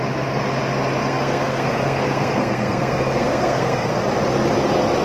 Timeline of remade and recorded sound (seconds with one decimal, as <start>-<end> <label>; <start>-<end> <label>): 0.0-1.0 recorded; 1.0-4.0 remade; 4.0-5.0 recorded